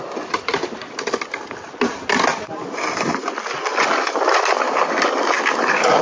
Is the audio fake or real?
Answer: real